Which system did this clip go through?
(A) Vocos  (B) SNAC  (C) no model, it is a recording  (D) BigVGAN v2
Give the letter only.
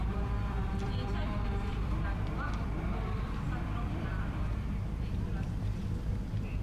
D